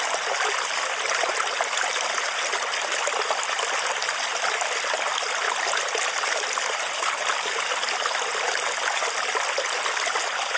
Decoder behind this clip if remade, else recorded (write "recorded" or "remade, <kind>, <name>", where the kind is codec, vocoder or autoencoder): recorded